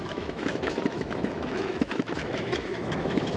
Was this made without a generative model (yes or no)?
no